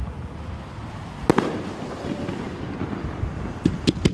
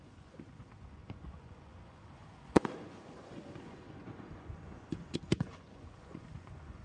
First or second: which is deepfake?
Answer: second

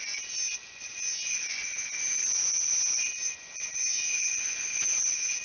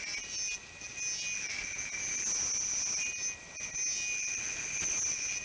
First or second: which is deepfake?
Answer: first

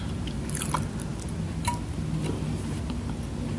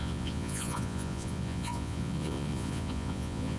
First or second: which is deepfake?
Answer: second